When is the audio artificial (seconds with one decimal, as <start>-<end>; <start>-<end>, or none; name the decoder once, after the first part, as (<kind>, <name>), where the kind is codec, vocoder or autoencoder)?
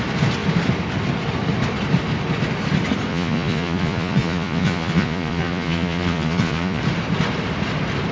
3.1-6.8 (vocoder, Vocos)